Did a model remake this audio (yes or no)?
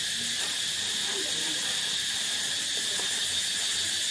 no